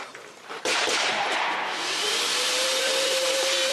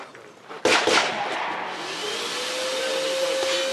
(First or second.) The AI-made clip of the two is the first